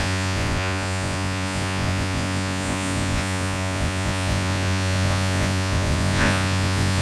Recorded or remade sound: remade